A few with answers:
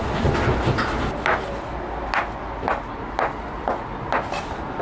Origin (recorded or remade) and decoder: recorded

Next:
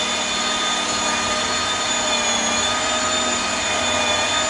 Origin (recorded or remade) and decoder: recorded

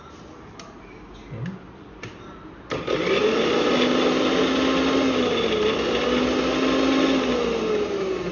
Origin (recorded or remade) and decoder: recorded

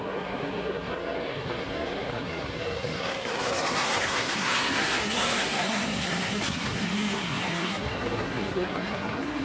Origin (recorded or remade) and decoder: remade, codec, SNAC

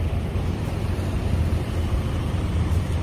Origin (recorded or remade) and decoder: remade, vocoder, BigVGAN v2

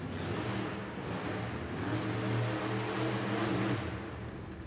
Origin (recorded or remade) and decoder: recorded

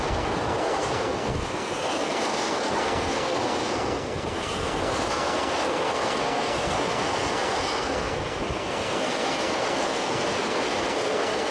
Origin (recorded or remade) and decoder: remade, codec, SNAC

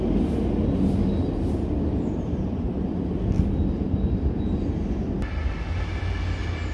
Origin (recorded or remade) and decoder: recorded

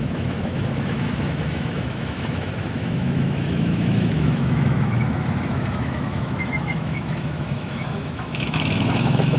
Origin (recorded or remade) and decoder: remade, autoencoder, DAC-VAE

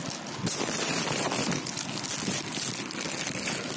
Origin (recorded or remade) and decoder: recorded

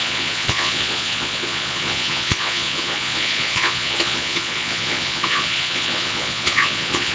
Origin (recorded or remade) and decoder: remade, vocoder, Vocos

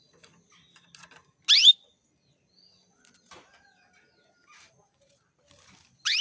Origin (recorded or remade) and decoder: recorded